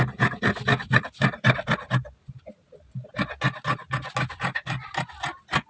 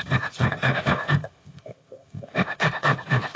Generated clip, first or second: second